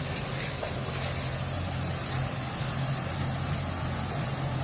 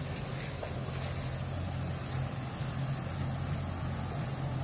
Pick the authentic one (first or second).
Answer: second